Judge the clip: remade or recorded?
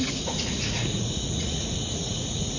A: remade